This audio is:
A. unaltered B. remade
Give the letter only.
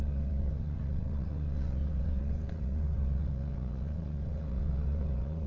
B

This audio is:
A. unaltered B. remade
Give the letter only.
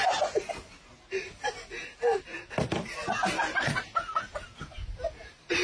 A